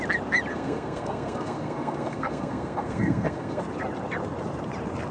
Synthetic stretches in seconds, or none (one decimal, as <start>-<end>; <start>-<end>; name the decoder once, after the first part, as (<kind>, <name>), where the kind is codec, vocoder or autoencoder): 0.5-3.6 (codec, SNAC)